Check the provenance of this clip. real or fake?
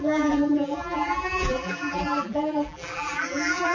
fake